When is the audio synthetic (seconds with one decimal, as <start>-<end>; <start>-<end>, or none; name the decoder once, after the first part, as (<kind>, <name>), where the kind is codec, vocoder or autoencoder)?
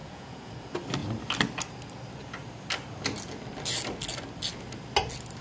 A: 0.0-0.5 (vocoder, Vocos)